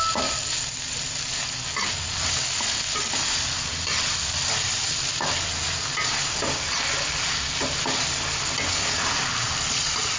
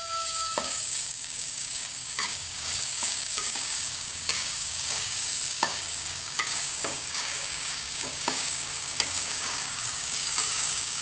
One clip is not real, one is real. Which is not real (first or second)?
second